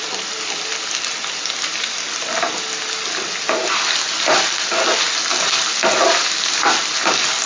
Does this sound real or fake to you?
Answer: real